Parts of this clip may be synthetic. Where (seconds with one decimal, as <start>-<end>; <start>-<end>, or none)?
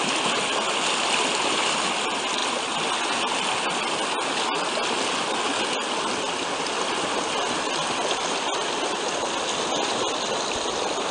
none